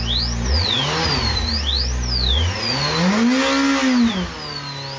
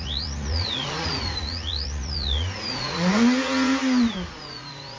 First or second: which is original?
first